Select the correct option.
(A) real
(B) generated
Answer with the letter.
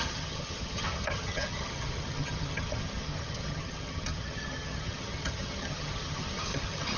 B